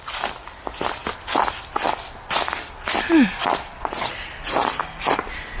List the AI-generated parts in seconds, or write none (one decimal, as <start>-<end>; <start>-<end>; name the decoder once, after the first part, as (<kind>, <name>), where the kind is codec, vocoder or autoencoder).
3.4-4.1 (vocoder, Vocos)